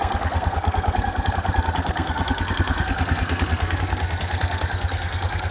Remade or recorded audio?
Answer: remade